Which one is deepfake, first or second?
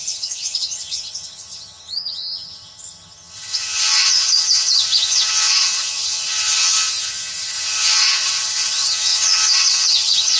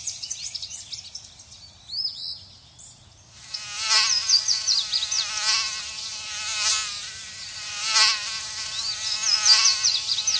first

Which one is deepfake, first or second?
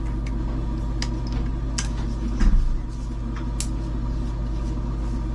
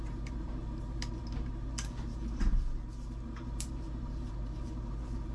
second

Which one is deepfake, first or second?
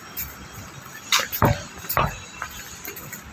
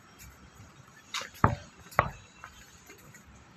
second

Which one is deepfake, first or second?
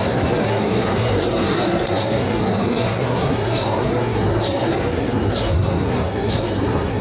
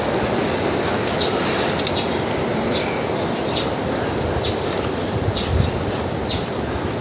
first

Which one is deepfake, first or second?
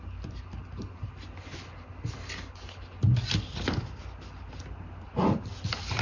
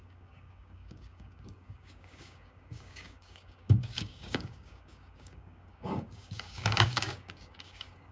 second